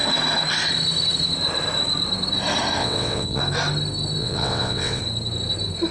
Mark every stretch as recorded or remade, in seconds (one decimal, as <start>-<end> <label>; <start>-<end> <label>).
0.0-2.8 recorded; 2.8-3.4 remade; 3.4-4.2 recorded; 4.2-5.0 remade; 5.0-5.9 recorded